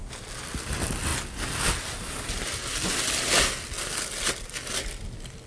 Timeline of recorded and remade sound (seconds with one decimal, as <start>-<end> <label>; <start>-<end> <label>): 0.0-5.5 recorded

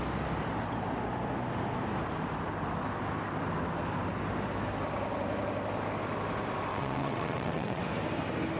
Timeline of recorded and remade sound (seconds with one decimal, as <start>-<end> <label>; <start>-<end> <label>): 0.0-6.7 recorded; 6.7-7.8 remade; 7.8-8.6 recorded